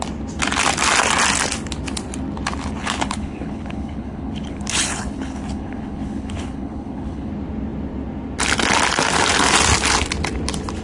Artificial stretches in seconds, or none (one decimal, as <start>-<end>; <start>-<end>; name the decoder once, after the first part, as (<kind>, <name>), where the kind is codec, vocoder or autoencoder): 2.8-7.3 (codec, HILCodec)